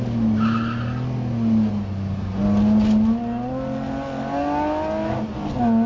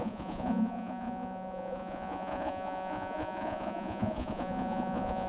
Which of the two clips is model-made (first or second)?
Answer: second